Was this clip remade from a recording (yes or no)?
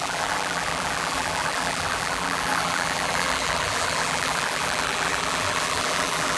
yes